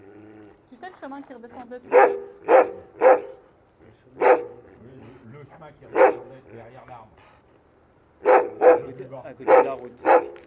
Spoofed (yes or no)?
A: no